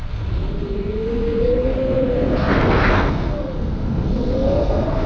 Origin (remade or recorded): remade